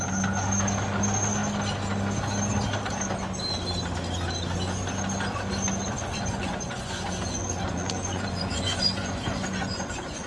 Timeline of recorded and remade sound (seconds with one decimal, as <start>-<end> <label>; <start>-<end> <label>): 0.0-5.9 recorded; 5.9-10.3 remade